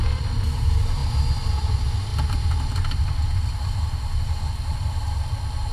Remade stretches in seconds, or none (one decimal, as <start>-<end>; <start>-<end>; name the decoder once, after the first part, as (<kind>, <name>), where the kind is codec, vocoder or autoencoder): none